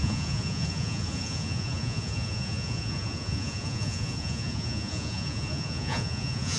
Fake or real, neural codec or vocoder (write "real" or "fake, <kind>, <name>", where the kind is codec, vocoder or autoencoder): fake, vocoder, Vocos